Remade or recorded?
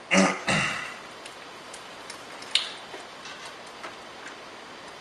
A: recorded